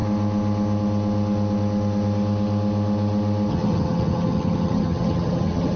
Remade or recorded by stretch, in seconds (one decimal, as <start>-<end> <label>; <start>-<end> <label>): 0.0-3.5 recorded; 3.5-5.8 remade